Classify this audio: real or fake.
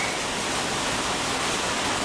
fake